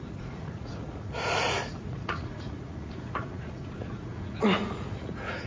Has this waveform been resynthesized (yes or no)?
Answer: yes